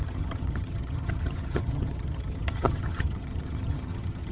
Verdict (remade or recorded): remade